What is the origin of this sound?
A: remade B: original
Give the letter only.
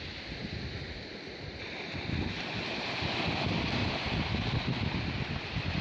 B